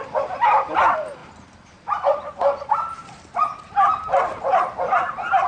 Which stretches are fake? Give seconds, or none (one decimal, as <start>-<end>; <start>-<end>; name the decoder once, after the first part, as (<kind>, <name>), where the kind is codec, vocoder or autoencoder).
none